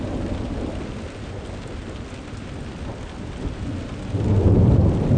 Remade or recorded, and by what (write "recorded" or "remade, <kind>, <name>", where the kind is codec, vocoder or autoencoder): recorded